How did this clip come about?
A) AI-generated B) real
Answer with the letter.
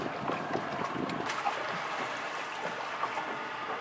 B